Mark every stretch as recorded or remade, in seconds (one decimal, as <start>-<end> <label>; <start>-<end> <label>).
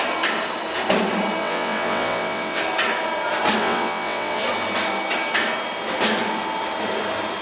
0.0-1.4 recorded; 1.4-2.6 remade; 2.6-3.6 recorded; 3.6-4.4 remade; 4.4-7.4 recorded